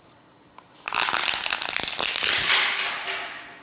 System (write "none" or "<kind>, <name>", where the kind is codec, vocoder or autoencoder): none